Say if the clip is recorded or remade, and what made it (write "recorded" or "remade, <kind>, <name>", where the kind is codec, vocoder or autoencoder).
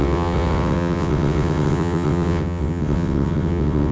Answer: remade, vocoder, WaveNeXt